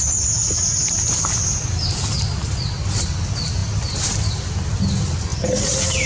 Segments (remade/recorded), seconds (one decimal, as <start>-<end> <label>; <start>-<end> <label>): 0.0-6.1 recorded